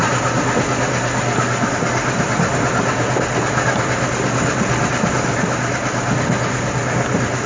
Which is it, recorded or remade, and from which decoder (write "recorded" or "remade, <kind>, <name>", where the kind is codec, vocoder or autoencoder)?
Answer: recorded